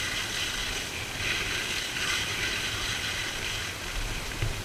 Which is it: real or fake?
real